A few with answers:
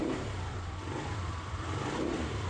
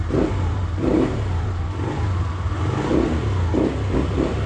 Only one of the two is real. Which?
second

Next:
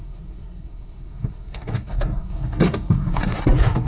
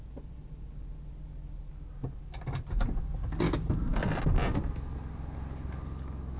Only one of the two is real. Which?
second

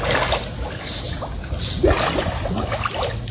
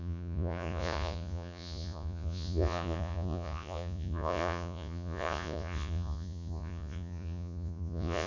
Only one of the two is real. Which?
first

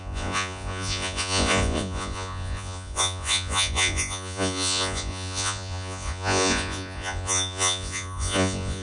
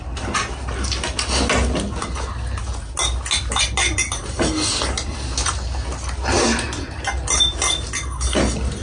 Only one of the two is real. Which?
second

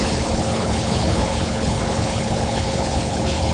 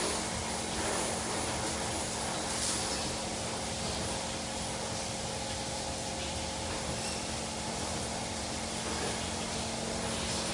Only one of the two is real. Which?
second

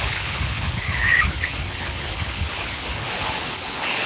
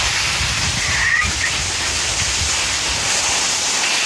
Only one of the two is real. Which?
second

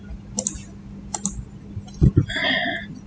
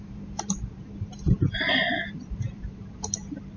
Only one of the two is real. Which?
first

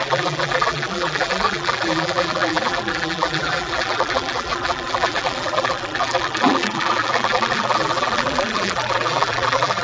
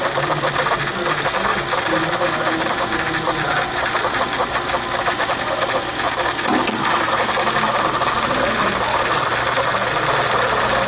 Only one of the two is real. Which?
second